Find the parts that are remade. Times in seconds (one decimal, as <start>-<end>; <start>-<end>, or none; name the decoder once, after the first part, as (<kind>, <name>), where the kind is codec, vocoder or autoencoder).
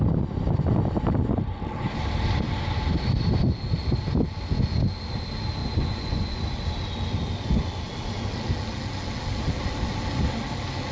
5.6-6.4 (vocoder, Vocos)